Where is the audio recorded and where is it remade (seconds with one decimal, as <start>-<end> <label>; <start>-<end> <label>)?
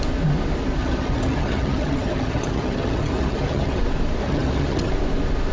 0.0-0.8 recorded; 0.8-3.8 remade; 3.8-4.2 recorded; 4.2-4.9 remade; 4.9-5.5 recorded